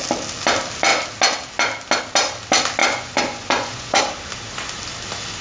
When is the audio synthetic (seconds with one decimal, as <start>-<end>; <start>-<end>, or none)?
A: 2.8-4.0